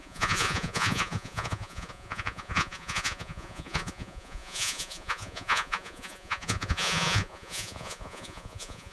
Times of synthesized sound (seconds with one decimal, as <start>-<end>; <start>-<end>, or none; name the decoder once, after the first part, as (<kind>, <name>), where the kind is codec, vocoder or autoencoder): 0.0-8.9 (vocoder, Vocos)